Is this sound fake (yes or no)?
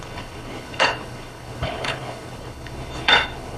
yes